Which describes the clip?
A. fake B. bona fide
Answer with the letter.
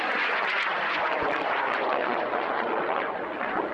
A